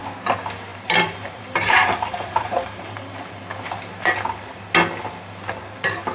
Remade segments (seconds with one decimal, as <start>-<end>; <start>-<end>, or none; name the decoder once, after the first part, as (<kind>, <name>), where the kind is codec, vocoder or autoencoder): 0.7-3.4 (vocoder, BigVGAN v2)